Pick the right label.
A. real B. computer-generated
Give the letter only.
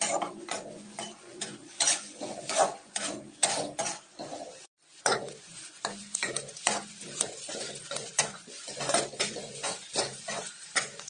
B